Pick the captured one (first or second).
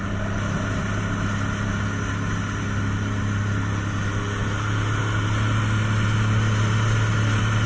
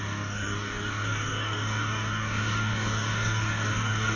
first